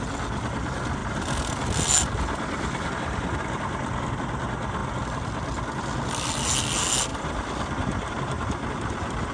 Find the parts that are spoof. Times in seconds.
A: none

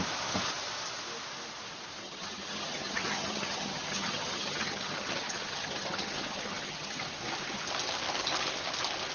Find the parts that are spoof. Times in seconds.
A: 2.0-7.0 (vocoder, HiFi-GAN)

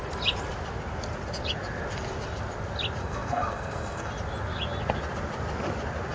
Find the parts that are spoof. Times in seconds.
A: 3.0-4.1 (codec, SNAC)